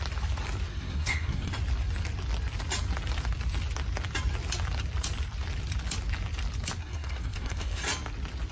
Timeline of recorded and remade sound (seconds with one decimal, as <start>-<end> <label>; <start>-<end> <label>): 0.0-0.7 recorded; 0.7-1.5 remade; 1.5-6.8 recorded; 6.8-7.8 remade; 7.8-8.5 recorded